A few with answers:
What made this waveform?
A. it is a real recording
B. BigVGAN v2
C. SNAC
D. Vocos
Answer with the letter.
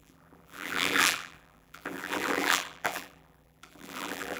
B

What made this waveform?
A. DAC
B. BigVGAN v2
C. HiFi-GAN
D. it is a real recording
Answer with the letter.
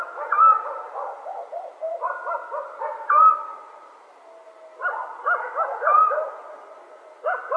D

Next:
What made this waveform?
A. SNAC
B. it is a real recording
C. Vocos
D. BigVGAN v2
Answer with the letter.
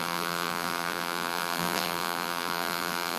D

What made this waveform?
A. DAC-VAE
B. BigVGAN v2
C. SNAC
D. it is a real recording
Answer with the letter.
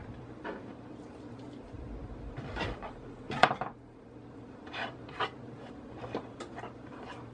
B